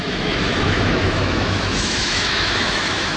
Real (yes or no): no